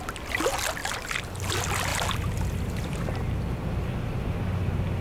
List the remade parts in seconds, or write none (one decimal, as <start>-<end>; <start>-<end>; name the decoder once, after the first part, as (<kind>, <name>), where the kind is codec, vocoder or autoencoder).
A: 0.8-1.5 (vocoder, BigVGAN v2); 1.9-3.2